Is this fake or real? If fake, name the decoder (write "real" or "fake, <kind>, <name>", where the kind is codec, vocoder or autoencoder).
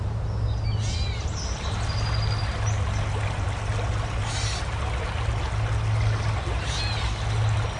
real